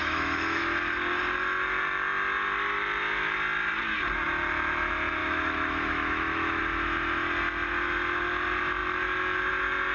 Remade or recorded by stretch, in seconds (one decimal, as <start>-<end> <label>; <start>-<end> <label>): 0.0-0.6 remade; 0.6-5.2 recorded; 5.2-6.6 remade; 6.6-9.9 recorded